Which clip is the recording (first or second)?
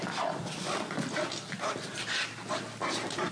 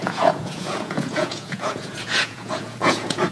first